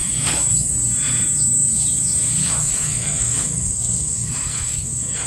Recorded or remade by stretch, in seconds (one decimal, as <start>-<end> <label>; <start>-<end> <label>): 0.0-0.7 remade; 0.7-2.4 recorded; 2.4-5.3 remade